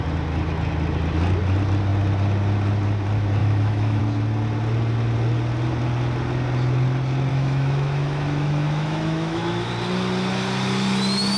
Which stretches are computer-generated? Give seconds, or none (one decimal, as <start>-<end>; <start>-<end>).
3.4-4.0; 7.3-9.7